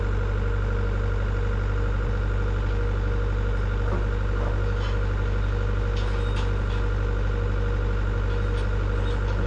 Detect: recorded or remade recorded